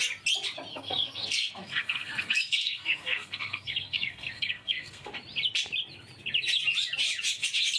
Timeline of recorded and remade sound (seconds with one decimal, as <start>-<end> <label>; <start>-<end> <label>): 0.0-0.7 recorded; 0.7-5.1 remade; 5.1-7.8 recorded